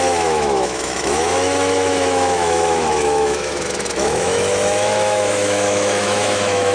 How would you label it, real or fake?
fake